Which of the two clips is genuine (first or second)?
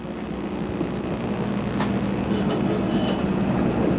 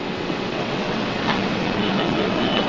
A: first